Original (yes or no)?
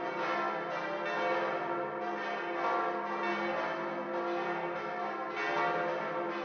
yes